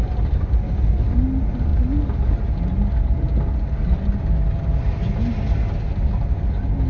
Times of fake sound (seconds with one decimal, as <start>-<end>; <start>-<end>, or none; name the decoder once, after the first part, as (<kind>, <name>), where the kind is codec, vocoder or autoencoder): none